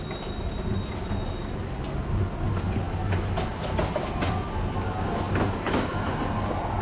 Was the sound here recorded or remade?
recorded